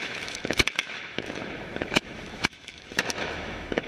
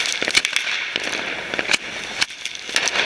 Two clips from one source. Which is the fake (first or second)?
first